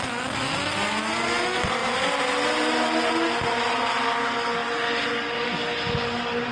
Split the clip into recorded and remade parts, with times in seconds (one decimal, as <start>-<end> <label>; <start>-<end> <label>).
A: 0.0-6.5 recorded